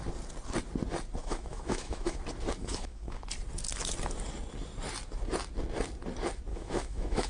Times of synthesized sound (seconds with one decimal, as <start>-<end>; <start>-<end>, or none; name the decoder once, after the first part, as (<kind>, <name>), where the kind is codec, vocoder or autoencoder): 1.2-2.2 (autoencoder, DAC-VAE); 2.6-3.2; 6.5-7.3